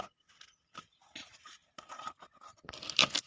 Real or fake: real